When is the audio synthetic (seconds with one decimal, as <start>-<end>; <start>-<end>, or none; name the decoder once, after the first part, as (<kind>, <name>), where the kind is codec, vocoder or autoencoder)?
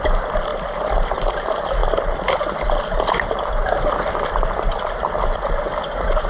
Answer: none